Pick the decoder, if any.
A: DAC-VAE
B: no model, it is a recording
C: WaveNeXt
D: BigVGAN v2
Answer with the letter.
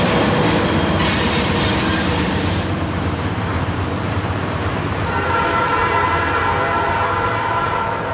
D